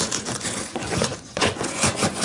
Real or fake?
fake